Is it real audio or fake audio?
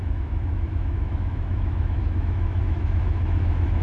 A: fake